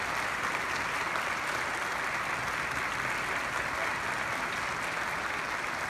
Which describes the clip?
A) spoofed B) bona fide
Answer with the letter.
B